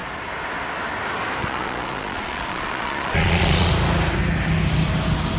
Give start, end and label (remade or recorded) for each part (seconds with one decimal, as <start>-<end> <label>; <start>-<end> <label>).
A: 0.0-1.4 recorded; 1.4-3.7 remade; 3.7-5.4 recorded